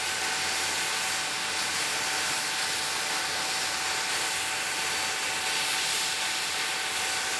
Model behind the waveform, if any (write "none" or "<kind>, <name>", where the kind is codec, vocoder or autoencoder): none